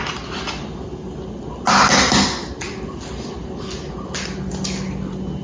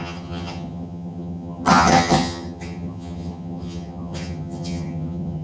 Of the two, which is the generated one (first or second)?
second